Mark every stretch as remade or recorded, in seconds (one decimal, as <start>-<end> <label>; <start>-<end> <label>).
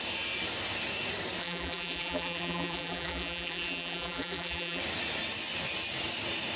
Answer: 0.0-1.4 recorded; 1.4-4.8 remade; 4.8-6.6 recorded